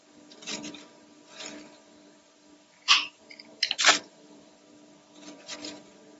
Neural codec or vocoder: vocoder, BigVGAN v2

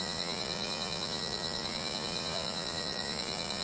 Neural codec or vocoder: vocoder, Vocos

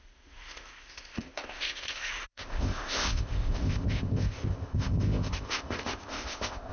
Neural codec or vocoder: codec, ZipCodec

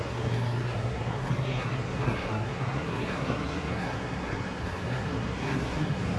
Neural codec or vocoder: codec, SNAC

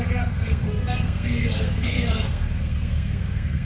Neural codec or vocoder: codec, SNAC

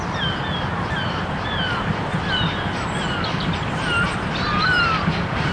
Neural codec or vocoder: vocoder, BigVGAN v2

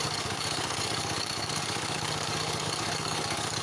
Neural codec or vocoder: codec, DAC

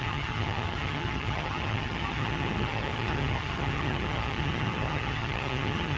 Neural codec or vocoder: vocoder, HiFi-GAN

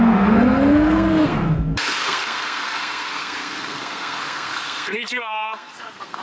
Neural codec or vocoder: codec, SNAC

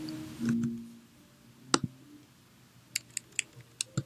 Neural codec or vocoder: none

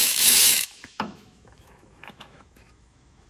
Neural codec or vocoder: autoencoder, DAC-VAE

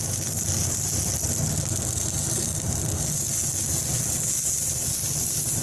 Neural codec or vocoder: none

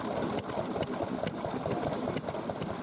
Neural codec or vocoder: none